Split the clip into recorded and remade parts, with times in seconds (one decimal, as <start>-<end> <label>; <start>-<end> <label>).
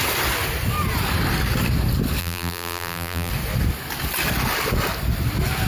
0.0-2.2 recorded; 2.2-3.3 remade; 3.3-5.7 recorded